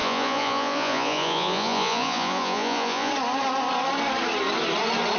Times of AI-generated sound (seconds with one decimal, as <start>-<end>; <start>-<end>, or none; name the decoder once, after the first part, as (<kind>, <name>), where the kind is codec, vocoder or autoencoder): 0.0-3.1 (vocoder, Vocos)